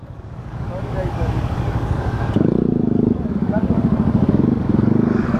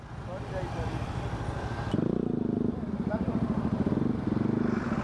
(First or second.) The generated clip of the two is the first